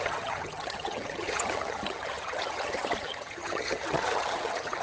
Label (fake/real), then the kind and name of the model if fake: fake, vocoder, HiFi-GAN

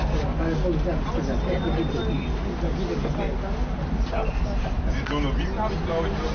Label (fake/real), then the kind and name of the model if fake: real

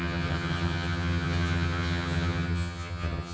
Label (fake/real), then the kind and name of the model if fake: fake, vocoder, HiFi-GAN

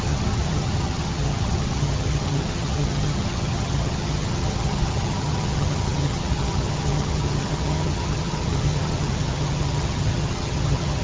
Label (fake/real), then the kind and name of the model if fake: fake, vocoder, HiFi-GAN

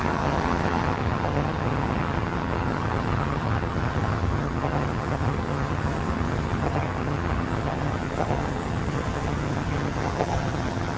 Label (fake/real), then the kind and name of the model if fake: fake, vocoder, HiFi-GAN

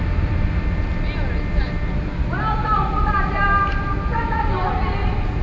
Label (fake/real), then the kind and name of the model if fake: real